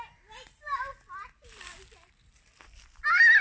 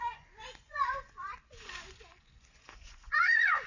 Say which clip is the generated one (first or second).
second